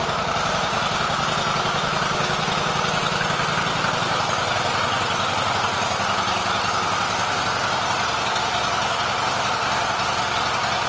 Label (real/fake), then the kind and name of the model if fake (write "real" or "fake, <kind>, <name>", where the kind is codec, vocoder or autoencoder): real